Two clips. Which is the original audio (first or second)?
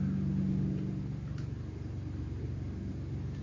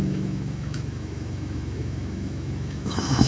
first